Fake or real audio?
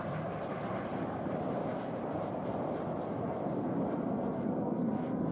real